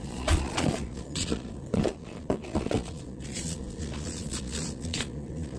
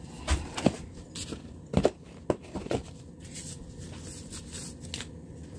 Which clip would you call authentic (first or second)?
second